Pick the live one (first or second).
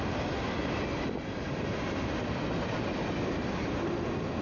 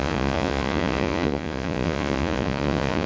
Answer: first